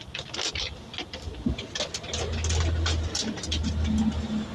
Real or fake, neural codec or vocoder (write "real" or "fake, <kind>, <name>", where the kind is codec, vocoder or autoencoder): real